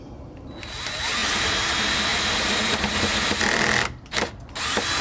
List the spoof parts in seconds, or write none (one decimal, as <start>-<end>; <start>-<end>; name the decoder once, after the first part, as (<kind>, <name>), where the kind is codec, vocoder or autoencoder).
none